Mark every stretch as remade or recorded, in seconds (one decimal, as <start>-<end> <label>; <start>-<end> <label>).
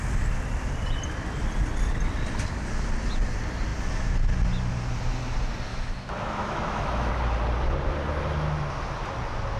0.0-5.7 recorded; 5.7-7.1 remade; 7.1-9.6 recorded